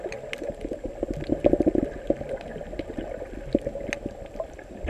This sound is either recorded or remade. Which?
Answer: recorded